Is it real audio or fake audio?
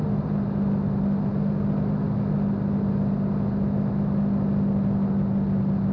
real